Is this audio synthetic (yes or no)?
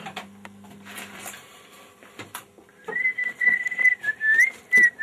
yes